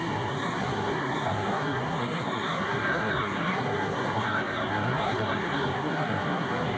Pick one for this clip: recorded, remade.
remade